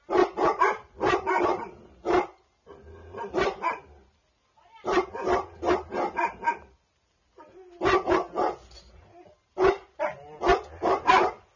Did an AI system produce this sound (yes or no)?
no